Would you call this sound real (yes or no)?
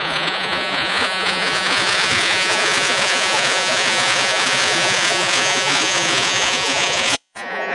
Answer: no